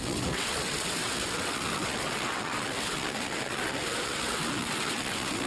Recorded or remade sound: remade